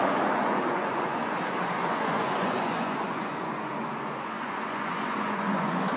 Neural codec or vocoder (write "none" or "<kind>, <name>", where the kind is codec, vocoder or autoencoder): vocoder, Vocos